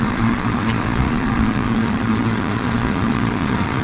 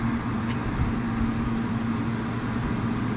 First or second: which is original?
second